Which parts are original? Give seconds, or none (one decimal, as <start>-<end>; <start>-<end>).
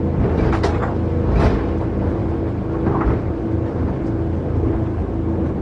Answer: 0.0-5.6